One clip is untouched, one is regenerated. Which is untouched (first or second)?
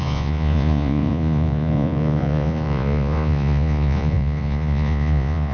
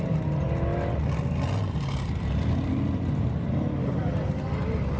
second